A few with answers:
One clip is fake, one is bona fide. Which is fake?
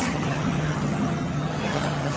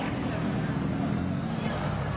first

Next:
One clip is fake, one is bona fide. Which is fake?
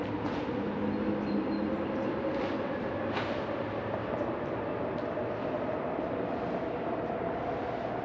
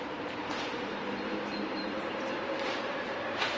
second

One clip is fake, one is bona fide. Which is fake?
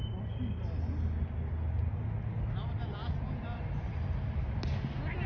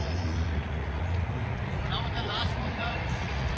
second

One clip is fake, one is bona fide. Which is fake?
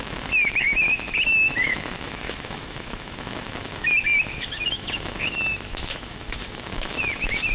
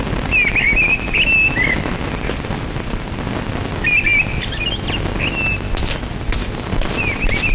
first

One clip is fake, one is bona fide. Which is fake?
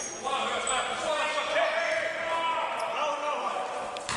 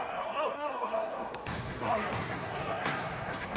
second